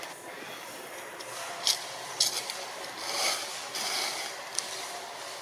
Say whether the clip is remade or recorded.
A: recorded